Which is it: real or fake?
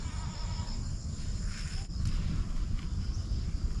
real